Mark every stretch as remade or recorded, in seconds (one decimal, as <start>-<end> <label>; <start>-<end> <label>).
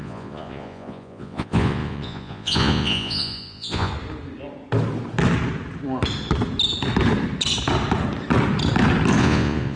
0.0-3.9 remade; 3.9-9.2 recorded; 9.2-9.8 remade